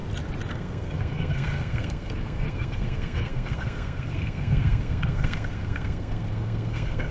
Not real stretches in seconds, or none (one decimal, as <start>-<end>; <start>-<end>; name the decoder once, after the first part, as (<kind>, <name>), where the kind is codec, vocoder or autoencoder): 0.5-7.1 (codec, SNAC)